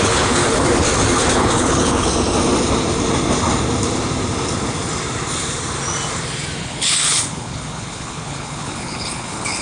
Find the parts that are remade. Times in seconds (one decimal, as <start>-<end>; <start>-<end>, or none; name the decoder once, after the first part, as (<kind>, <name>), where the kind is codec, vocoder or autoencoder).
0.0-0.4 (codec, HILCodec); 1.3-2.1; 6.6-9.6